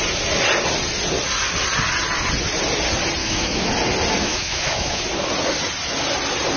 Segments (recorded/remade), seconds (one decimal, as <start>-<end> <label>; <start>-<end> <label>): 0.0-3.2 recorded; 3.2-3.7 remade; 3.7-4.2 recorded; 4.2-5.0 remade; 5.0-6.6 recorded